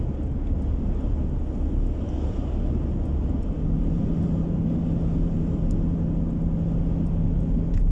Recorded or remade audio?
recorded